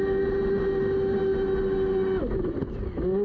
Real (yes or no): yes